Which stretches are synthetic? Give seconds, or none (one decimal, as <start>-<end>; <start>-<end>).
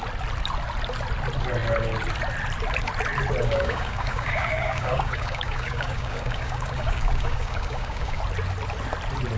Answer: 3.4-8.2